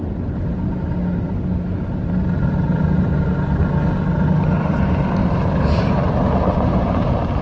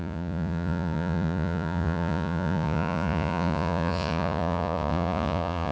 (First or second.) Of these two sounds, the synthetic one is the second